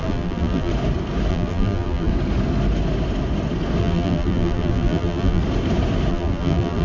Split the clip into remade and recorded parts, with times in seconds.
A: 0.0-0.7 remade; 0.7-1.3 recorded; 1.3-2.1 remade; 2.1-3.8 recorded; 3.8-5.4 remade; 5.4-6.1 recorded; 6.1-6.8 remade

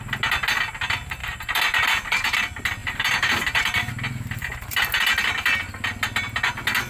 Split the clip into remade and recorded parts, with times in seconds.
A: 0.0-1.2 recorded; 1.2-2.4 remade; 2.4-2.8 recorded; 2.8-3.9 remade; 3.9-6.9 recorded

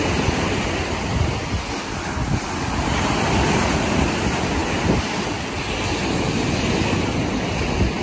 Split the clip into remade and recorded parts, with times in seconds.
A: 0.0-8.0 recorded